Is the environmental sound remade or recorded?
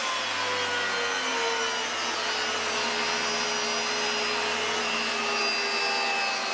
recorded